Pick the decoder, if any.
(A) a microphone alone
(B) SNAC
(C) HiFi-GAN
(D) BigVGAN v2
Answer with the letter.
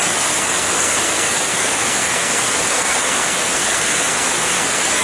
B